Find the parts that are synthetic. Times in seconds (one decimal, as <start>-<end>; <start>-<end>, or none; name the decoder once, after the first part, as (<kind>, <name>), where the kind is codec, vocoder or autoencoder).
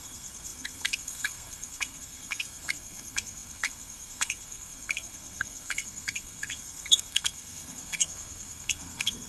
0.0-9.3 (codec, SNAC)